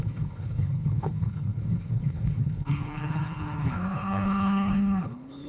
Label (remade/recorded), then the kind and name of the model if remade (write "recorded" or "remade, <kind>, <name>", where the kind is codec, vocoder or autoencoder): remade, codec, HILCodec